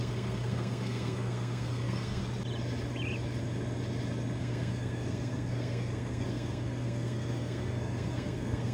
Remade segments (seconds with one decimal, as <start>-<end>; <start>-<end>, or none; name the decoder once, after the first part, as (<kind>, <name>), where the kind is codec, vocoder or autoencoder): 0.0-2.2 (codec, SNAC); 4.4-8.7